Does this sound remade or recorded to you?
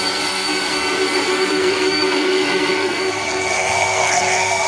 remade